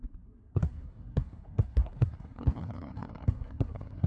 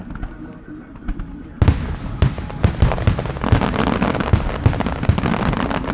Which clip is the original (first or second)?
second